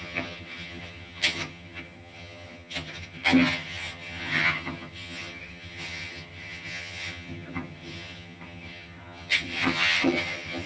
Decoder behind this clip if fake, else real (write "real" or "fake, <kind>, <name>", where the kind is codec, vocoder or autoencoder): fake, vocoder, HiFi-GAN